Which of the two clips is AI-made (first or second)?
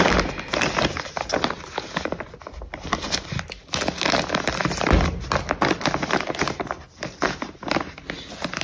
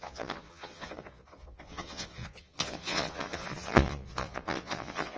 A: second